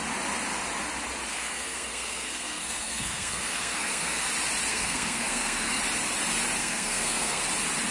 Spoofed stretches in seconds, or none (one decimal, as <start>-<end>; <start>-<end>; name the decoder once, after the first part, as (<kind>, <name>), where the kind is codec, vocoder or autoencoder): 1.3-4.3 (codec, SNAC); 4.7-5.8; 6.6-7.4

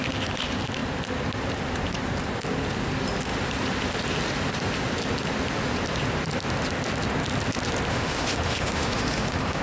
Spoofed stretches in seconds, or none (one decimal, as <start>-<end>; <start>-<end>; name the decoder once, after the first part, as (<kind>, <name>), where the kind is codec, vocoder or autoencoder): 7.9-9.6 (autoencoder, DAC-VAE)

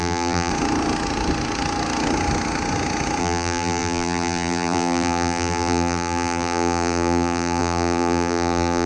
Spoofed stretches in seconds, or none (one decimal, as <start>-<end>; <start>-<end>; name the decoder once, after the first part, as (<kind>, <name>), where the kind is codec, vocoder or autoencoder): 0.0-0.5 (vocoder, BigVGAN v2); 3.2-8.9

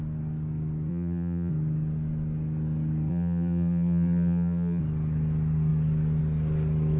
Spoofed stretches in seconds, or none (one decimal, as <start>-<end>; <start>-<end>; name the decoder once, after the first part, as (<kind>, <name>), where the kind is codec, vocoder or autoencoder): 0.9-1.5 (vocoder, BigVGAN v2); 3.1-4.8

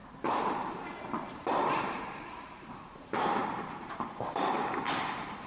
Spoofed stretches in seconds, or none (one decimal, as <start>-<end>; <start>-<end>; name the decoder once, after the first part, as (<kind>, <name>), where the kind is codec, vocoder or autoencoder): 0.0-5.5 (vocoder, BigVGAN v2)

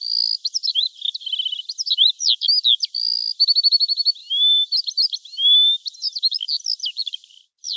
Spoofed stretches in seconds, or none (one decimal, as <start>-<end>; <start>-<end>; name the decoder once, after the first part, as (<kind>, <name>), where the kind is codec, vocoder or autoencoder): none